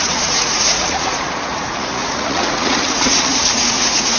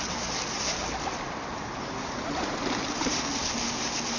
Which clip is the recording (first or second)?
second